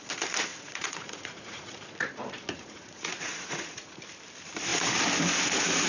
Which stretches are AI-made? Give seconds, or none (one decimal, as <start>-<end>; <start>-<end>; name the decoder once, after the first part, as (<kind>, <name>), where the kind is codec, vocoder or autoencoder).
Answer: 0.5-4.0 (vocoder, Vocos)